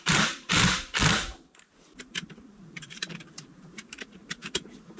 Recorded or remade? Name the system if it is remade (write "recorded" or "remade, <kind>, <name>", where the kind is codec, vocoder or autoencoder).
remade, vocoder, BigVGAN v2